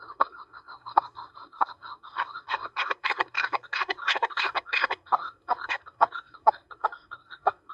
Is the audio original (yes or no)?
no